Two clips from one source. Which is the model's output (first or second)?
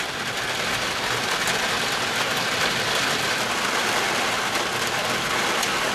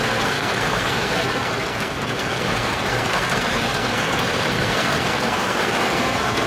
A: second